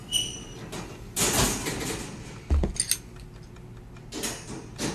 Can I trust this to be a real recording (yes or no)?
yes